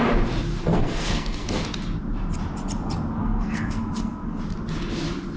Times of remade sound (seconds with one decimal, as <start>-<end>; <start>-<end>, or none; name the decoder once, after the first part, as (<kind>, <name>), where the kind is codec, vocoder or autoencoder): 0.6-1.6 (codec, SNAC); 3.2-4.4